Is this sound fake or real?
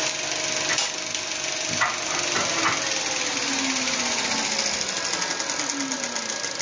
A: real